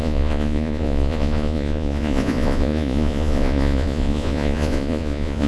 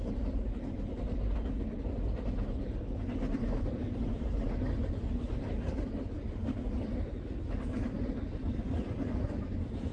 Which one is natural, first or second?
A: second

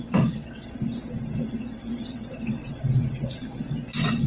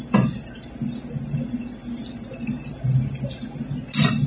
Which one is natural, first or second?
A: second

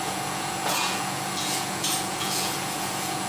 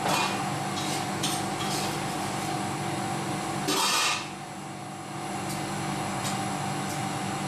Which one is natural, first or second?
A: second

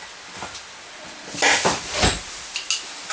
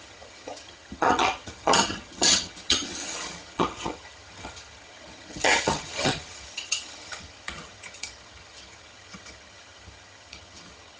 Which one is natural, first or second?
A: first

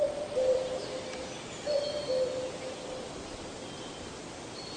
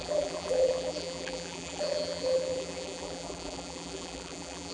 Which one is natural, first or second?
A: first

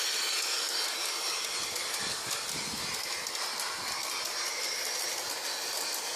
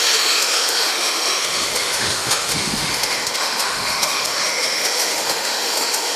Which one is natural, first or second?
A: first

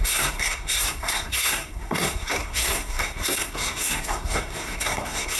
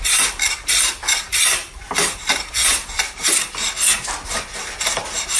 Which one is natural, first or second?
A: second